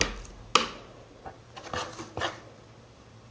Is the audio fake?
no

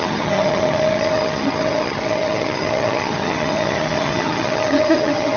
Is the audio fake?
yes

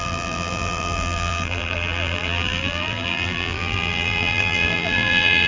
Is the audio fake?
yes